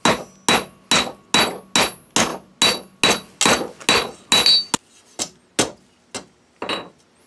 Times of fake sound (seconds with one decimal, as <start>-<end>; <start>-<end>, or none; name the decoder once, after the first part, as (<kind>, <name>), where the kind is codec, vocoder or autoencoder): none